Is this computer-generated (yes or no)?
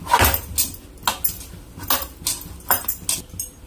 no